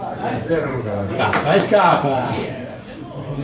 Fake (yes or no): yes